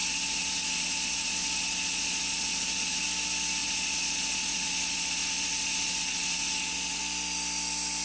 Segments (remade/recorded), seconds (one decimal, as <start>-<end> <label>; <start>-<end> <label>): 0.0-3.0 remade; 3.0-3.6 recorded; 3.6-7.0 remade; 7.0-8.0 recorded

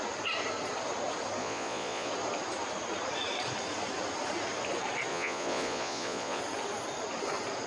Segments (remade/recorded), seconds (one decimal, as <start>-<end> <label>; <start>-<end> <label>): 0.0-1.4 recorded; 1.4-2.1 remade; 2.1-5.1 recorded; 5.1-6.4 remade; 6.4-7.7 recorded

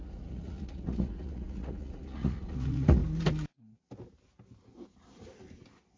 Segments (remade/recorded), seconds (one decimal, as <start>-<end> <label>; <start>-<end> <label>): 0.0-3.0 remade; 3.0-6.0 recorded

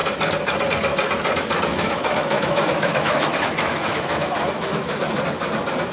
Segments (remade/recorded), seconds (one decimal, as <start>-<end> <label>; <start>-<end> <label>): 0.0-1.7 recorded; 1.7-5.2 remade; 5.2-5.9 recorded

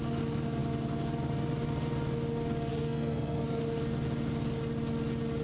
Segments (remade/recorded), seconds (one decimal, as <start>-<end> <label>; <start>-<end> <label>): 0.0-2.7 recorded; 2.7-3.6 remade; 3.6-5.4 recorded

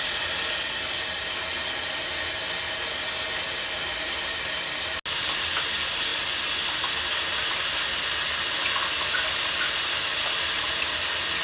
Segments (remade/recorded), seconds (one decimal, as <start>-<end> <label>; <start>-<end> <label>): 0.0-11.4 recorded